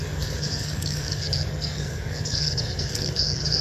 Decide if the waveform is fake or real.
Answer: fake